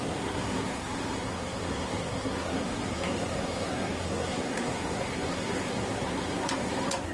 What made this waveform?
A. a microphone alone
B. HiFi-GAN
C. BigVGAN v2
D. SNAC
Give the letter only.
D